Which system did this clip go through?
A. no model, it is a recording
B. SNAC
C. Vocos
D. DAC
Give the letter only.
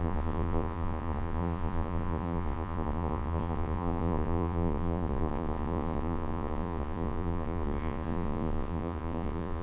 C